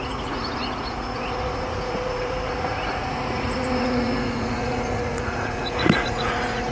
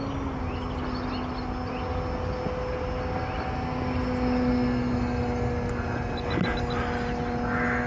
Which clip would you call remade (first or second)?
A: first